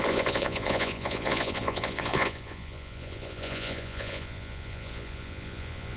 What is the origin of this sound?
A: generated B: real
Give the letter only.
A